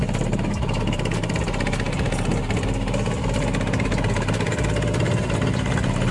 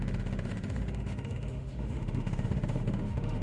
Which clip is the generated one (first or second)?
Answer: second